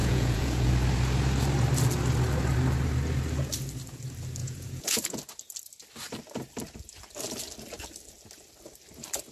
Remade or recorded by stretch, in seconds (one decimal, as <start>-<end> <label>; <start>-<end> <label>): 0.0-0.7 remade; 0.7-4.4 recorded; 4.4-5.2 remade; 5.2-9.3 recorded